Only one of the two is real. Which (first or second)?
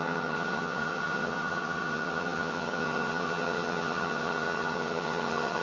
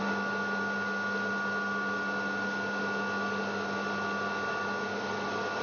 second